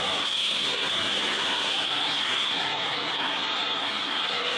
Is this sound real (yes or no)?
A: no